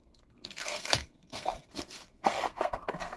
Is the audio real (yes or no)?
no